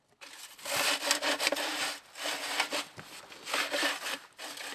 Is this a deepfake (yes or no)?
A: no